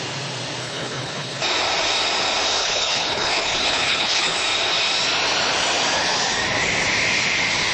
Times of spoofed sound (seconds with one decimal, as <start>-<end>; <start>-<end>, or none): 0.6-1.4; 2.6-4.4